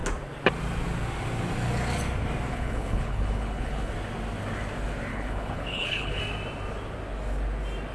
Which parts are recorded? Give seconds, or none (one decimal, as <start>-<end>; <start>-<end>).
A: 0.0-2.5; 3.9-5.1; 6.2-7.9